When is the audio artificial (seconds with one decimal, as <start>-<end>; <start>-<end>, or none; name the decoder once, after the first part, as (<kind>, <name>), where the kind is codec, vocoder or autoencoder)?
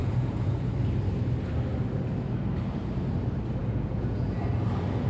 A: 0.0-0.7 (vocoder, Vocos); 3.6-4.4